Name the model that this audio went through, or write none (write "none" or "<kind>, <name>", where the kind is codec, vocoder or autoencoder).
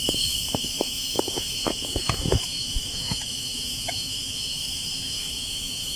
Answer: autoencoder, DAC-VAE